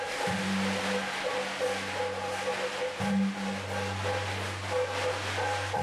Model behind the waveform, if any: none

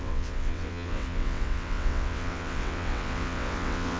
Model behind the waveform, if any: vocoder, WaveNeXt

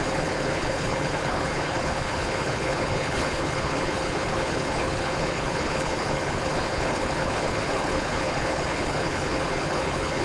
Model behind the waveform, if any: codec, HILCodec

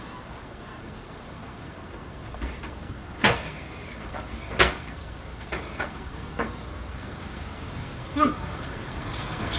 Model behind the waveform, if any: codec, SNAC